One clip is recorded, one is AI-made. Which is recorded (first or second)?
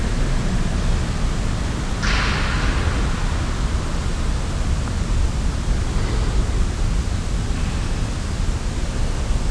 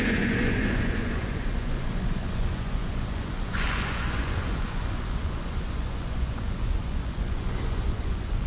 first